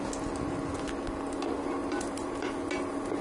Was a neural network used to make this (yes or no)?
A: no